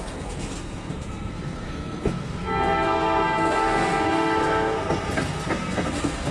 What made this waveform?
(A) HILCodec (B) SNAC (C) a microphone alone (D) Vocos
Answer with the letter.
B